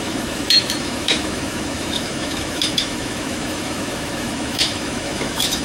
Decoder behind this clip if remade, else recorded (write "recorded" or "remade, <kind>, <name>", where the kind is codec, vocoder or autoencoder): remade, autoencoder, DAC-VAE